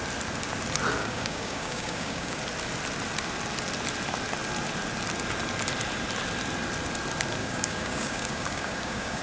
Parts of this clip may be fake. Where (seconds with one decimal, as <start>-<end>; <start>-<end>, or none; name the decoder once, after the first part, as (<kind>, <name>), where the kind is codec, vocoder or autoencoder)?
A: 1.0-2.4 (codec, DAC); 7.4-9.2